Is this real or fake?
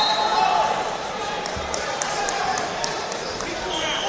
fake